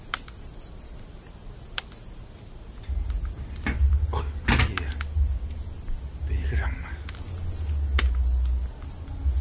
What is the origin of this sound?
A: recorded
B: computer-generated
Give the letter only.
A